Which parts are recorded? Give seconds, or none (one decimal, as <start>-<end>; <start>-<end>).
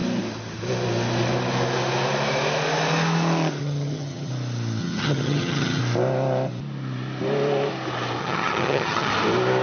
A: 0.0-3.6; 4.3-4.8; 5.8-8.2; 9.1-9.6